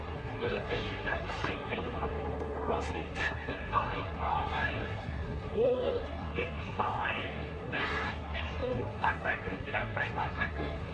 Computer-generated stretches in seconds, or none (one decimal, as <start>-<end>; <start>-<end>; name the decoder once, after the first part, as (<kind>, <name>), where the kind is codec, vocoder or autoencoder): 0.0-10.9 (codec, SNAC)